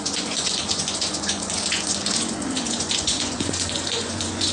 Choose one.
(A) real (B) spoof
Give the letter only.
B